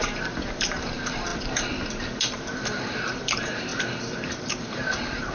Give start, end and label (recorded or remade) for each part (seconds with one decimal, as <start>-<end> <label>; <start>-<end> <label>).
0.0-1.3 remade; 1.3-2.4 recorded; 2.4-5.3 remade